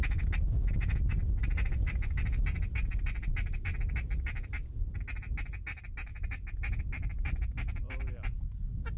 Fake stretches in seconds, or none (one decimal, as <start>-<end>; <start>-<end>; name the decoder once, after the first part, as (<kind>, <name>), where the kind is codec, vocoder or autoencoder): 6.1-6.8 (vocoder, Vocos)